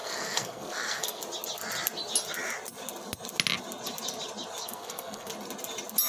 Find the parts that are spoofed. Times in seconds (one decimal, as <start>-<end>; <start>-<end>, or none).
0.0-1.2; 4.6-5.3